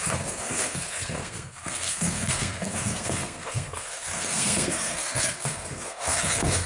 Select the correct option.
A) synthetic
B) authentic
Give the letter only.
A